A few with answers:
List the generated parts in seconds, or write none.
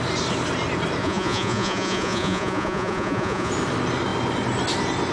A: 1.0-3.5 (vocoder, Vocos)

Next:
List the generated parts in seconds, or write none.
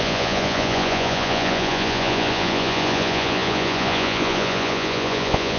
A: 0.0-5.6 (vocoder, Vocos)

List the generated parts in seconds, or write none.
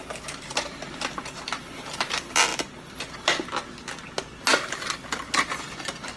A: none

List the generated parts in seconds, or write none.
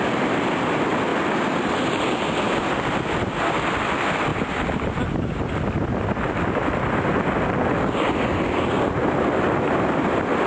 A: none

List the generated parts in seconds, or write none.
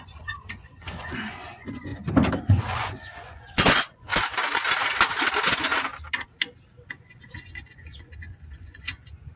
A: 0.0-1.9 (vocoder, Vocos); 2.4-4.1; 6.9-9.4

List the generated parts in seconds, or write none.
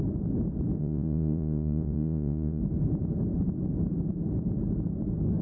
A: 0.8-2.6 (vocoder, Vocos)